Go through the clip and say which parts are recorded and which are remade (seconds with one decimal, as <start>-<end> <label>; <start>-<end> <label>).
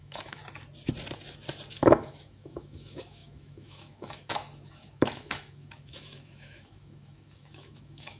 0.0-0.4 remade; 0.4-1.7 recorded; 1.7-8.2 remade